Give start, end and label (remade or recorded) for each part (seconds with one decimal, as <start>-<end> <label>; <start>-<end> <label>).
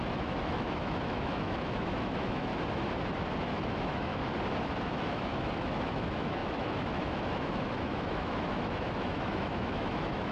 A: 0.0-2.5 remade; 2.5-3.4 recorded; 3.4-4.1 remade; 4.1-4.8 recorded; 4.8-10.3 remade